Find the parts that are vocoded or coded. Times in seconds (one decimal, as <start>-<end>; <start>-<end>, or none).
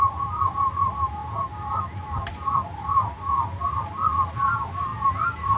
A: none